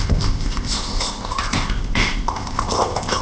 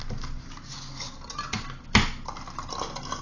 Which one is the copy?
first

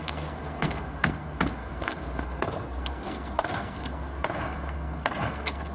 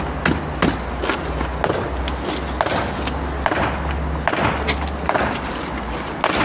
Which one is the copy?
first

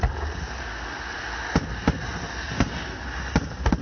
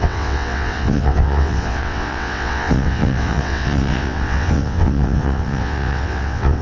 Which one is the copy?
second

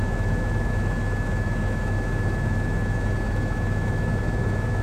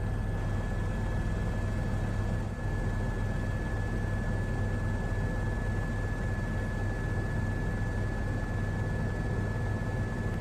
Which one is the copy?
first